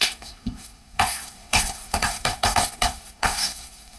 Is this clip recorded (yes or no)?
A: no